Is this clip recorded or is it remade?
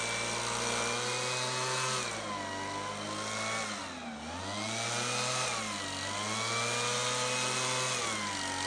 recorded